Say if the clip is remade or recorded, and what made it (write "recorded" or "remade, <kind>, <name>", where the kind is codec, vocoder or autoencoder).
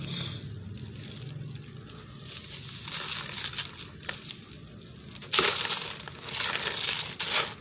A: recorded